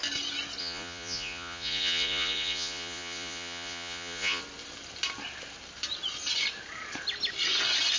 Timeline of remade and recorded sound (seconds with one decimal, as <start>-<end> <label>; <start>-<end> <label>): 0.0-0.6 recorded; 0.6-4.4 remade; 4.4-8.0 recorded